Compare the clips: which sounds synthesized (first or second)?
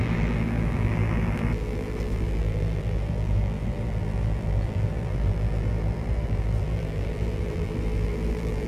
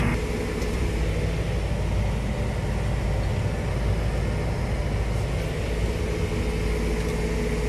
first